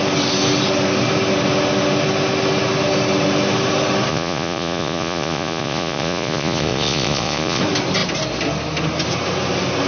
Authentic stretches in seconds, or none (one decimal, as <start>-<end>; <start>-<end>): 0.0-4.1; 7.6-9.9